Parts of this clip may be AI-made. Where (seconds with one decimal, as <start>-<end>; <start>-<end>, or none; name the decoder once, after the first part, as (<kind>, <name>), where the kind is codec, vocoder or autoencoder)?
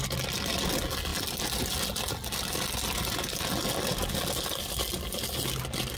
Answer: none